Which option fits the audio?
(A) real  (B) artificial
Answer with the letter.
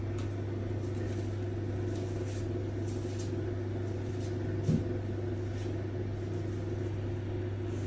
A